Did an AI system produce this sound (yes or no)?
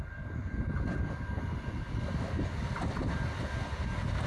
no